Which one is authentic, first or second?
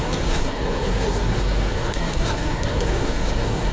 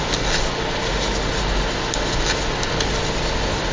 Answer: second